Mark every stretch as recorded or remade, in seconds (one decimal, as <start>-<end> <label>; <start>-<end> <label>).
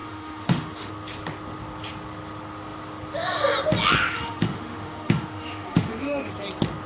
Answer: 0.0-0.9 remade; 0.9-4.1 recorded; 4.1-6.3 remade; 6.3-6.9 recorded